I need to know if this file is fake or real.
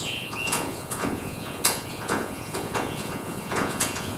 fake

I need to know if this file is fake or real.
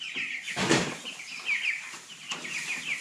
fake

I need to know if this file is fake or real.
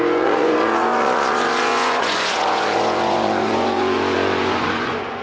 fake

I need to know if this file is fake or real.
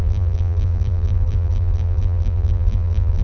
fake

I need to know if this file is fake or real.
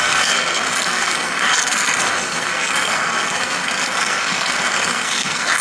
fake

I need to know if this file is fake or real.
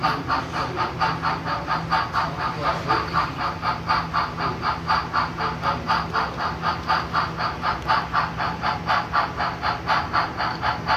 real